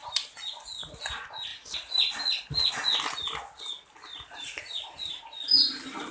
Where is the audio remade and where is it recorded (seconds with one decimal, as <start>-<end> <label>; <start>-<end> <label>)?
0.0-6.1 recorded